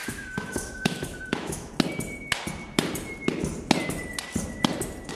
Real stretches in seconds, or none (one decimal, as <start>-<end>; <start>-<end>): 1.7-5.1